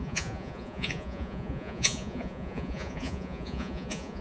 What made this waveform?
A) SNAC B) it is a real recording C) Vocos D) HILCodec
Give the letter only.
C